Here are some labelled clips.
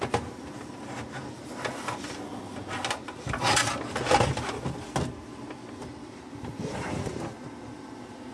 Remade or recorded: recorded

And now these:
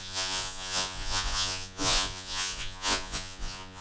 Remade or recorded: remade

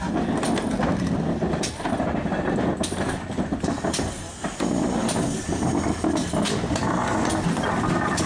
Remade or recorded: recorded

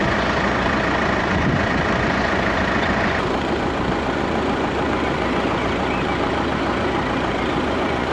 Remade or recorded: remade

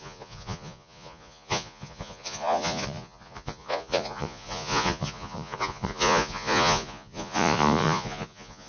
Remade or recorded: remade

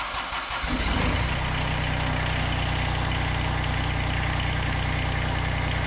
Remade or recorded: recorded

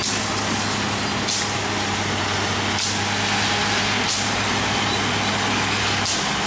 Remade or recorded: recorded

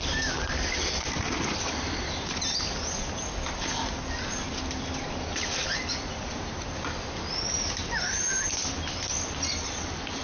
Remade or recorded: recorded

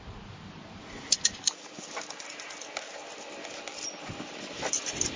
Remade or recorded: recorded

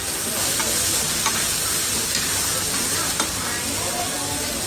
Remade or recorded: recorded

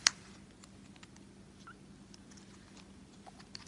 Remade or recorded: recorded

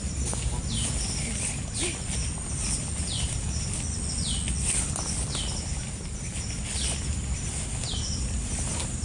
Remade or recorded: recorded